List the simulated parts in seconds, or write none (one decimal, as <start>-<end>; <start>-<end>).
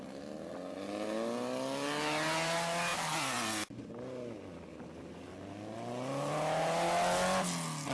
none